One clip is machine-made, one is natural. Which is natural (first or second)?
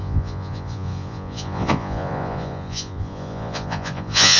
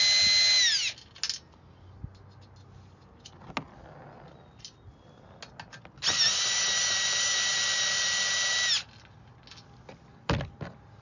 second